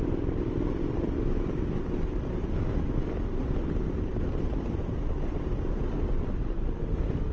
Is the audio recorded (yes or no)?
no